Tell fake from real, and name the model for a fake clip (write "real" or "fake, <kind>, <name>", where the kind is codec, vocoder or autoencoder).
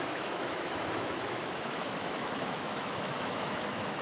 fake, autoencoder, DAC-VAE